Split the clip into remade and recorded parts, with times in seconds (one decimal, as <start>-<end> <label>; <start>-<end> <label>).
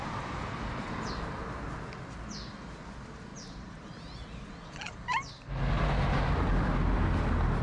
0.0-3.3 recorded; 3.3-4.5 remade; 4.5-7.6 recorded